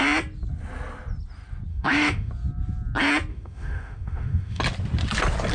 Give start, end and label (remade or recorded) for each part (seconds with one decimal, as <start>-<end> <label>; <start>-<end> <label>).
0.0-1.7 recorded; 1.7-2.3 remade; 2.3-3.3 recorded; 3.3-4.6 remade; 4.6-5.5 recorded